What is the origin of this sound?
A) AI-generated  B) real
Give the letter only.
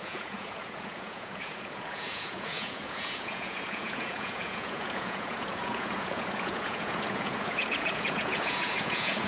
A